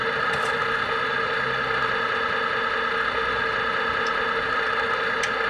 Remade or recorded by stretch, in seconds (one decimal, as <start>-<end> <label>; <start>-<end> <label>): 0.0-0.6 remade; 0.6-5.5 recorded